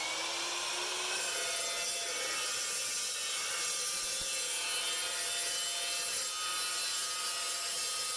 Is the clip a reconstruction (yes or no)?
no